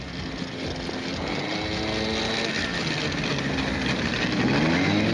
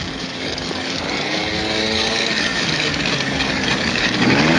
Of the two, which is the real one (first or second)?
first